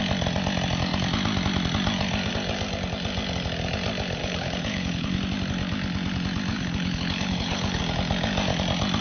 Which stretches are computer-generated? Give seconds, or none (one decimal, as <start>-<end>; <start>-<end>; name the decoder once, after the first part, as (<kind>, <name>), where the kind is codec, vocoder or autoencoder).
4.2-5.2 (codec, HILCodec); 6.5-7.8